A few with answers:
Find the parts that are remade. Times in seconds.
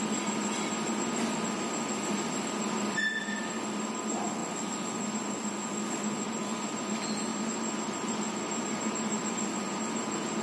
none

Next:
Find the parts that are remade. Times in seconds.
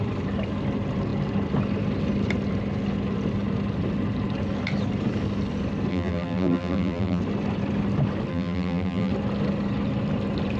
5.9-7.2 (vocoder, BigVGAN v2); 8.3-9.1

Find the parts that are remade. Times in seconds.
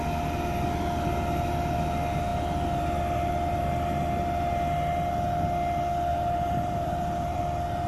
6.1-7.4 (vocoder, BigVGAN v2)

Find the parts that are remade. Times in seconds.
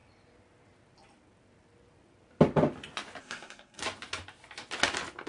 3.2-3.8 (codec, SNAC)